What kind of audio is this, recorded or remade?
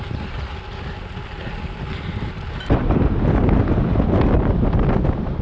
recorded